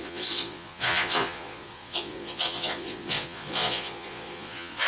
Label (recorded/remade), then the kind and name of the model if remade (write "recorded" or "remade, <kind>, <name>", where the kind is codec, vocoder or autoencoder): remade, vocoder, Vocos